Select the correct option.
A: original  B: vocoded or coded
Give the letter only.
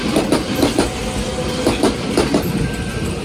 A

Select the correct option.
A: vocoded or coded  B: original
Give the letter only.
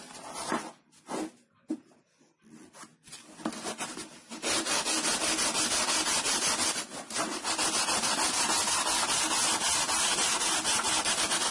B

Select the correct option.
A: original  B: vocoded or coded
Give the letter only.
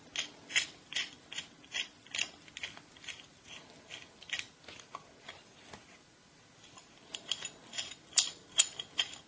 A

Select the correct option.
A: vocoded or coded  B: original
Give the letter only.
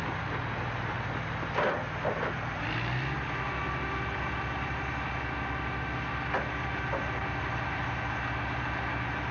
B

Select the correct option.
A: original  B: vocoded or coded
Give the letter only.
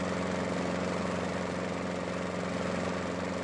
A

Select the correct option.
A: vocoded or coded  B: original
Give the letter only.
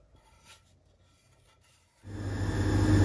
B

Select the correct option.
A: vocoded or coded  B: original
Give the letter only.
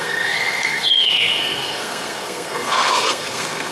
A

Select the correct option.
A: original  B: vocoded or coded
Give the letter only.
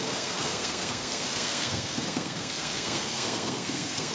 B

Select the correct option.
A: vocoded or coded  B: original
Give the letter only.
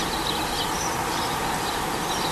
B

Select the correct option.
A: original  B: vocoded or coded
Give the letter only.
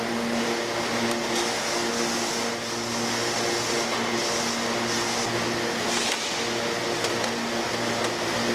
A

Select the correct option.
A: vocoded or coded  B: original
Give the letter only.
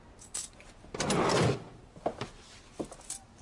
B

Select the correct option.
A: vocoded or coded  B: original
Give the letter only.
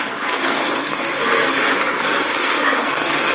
A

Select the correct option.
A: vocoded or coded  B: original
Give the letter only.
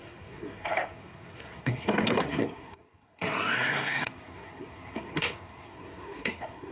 A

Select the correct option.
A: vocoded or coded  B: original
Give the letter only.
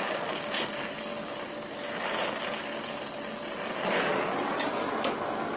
B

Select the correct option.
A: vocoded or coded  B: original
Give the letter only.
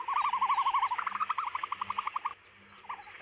B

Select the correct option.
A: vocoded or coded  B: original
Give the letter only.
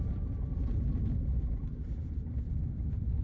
B